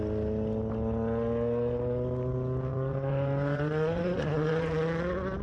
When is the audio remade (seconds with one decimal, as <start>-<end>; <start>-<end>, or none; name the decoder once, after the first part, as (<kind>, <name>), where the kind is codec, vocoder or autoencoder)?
2.7-4.7 (vocoder, Vocos)